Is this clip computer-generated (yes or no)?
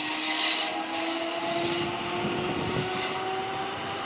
no